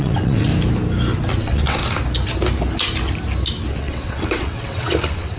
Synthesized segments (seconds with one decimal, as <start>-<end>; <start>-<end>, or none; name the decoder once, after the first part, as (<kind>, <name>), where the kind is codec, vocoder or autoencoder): 0.0-0.5 (vocoder, WaveNeXt); 1.4-1.8; 3.7-5.4